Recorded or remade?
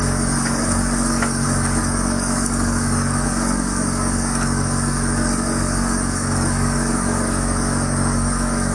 remade